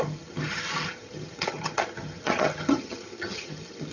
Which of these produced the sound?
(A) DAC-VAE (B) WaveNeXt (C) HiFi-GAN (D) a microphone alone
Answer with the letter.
C